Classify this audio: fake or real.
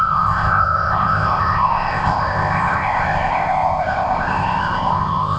fake